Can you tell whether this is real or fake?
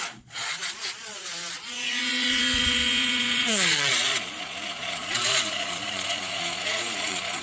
fake